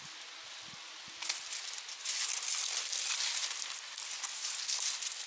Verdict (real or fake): real